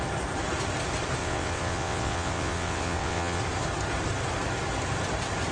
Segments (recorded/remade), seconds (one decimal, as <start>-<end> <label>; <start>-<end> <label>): 0.0-1.2 recorded; 1.2-3.4 remade; 3.4-5.5 recorded